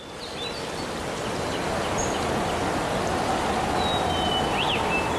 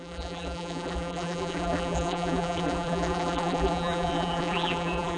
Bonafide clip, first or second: first